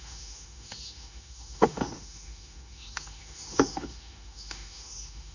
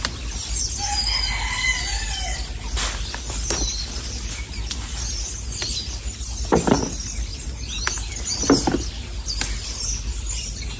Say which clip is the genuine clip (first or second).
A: second